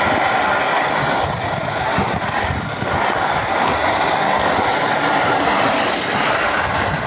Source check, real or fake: real